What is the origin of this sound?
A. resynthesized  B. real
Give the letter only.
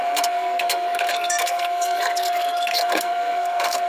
A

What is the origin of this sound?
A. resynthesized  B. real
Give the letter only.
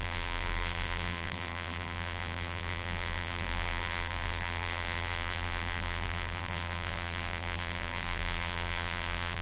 A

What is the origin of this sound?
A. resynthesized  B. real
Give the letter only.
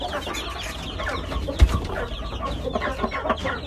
B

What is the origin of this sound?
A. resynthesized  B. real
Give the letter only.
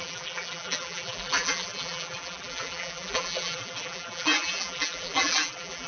A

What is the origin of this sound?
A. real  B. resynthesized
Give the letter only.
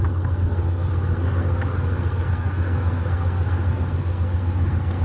B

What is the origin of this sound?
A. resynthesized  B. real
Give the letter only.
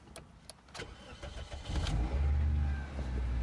B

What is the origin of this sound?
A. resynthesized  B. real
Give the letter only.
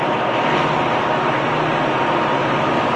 B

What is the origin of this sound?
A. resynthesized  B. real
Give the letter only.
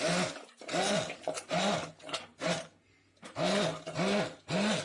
B